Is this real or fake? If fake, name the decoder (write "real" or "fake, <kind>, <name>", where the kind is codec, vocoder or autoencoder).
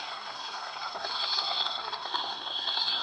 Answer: fake, codec, SNAC